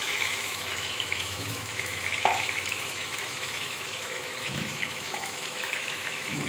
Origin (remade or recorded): remade